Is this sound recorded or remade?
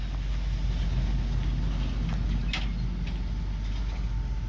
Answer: recorded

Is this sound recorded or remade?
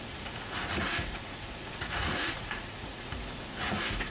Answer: remade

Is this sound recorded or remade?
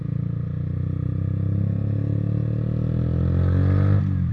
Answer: recorded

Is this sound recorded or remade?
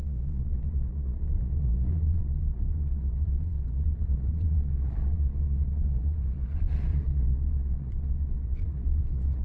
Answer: remade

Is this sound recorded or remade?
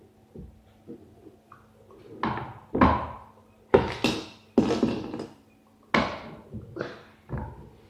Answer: recorded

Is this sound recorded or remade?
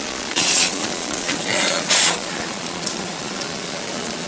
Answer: remade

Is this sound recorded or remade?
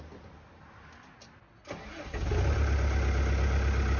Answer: recorded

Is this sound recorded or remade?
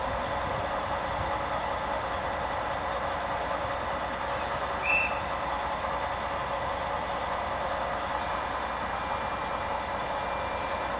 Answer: recorded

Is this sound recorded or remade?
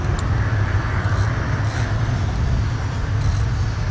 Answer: recorded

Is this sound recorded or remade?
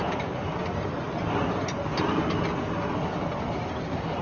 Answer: recorded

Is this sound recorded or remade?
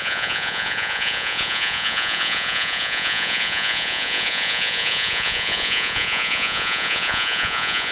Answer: remade